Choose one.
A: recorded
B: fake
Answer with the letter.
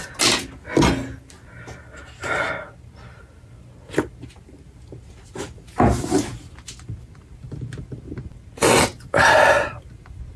A